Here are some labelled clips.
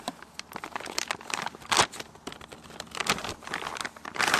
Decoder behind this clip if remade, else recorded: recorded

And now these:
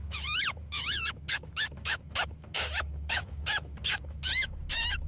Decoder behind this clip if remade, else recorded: remade, autoencoder, DAC-VAE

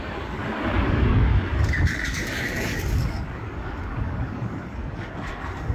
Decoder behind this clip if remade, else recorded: remade, codec, DAC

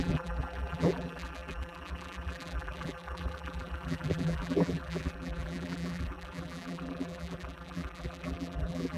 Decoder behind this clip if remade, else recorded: remade, vocoder, BigVGAN v2